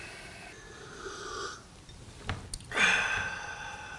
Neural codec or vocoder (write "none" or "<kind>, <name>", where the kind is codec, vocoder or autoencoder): none